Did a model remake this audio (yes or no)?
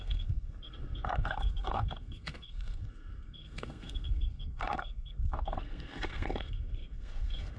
yes